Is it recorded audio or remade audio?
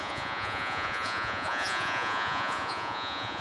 remade